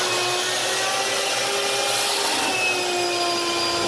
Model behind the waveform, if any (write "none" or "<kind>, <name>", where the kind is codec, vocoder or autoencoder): none